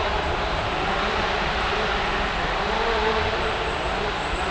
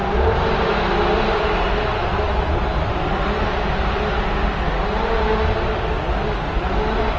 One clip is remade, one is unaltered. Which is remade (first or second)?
first